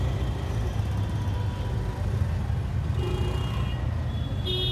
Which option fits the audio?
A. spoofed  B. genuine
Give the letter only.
B